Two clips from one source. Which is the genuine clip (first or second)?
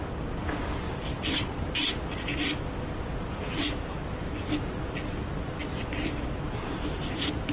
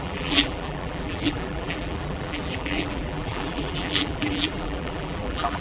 first